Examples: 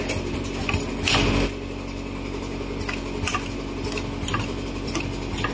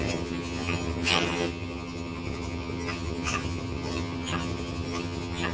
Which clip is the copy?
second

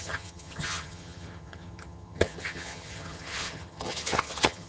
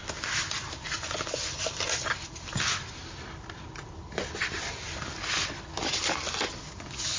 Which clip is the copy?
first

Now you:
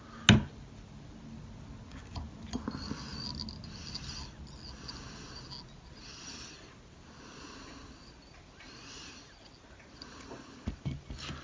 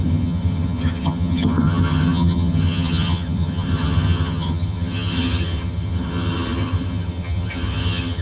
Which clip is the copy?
second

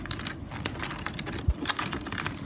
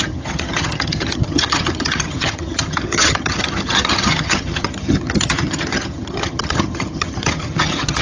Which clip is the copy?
second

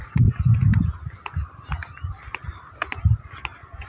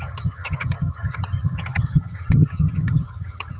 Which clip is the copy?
second